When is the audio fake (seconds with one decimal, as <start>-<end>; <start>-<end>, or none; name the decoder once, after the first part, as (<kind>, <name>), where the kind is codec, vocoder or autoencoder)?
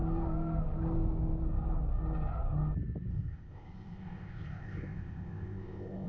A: 3.1-6.1 (codec, ZipCodec)